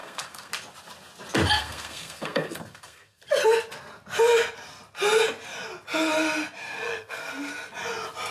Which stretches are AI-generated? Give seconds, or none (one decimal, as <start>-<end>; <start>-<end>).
0.0-0.5; 1.6-3.2; 6.6-7.3